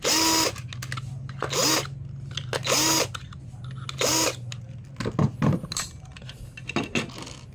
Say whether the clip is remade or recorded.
recorded